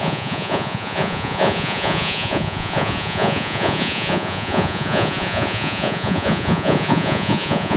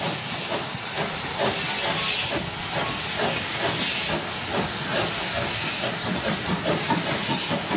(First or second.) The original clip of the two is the second